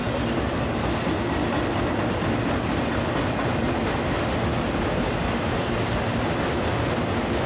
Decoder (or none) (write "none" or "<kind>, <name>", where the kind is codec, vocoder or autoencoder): none